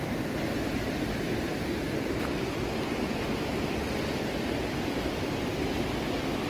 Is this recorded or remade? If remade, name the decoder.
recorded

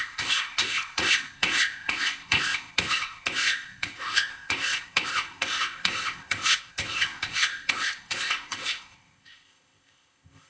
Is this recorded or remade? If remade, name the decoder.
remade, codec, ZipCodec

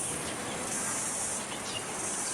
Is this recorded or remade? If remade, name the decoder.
remade, vocoder, BigVGAN v2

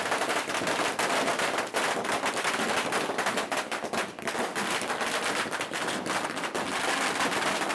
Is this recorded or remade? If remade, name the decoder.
remade, vocoder, BigVGAN v2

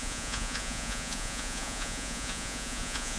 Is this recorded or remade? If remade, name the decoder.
remade, vocoder, Vocos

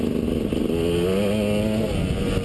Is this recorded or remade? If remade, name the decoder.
recorded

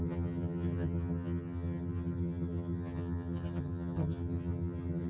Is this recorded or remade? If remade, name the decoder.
remade, vocoder, HiFi-GAN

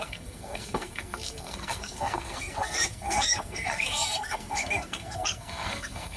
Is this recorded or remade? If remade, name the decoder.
remade, codec, SNAC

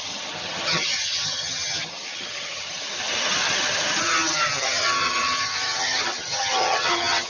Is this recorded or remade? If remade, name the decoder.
remade, vocoder, HiFi-GAN